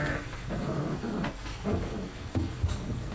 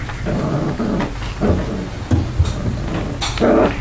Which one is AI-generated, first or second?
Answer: first